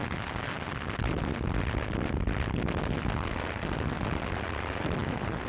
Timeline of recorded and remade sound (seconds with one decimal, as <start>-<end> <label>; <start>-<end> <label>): 0.0-5.0 recorded; 5.0-5.5 remade